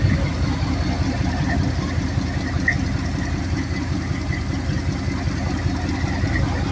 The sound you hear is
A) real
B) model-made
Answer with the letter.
A